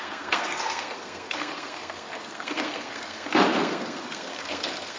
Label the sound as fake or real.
fake